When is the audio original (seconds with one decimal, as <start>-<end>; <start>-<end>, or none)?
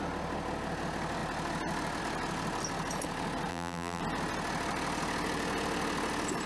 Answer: 0.0-3.5; 4.0-6.5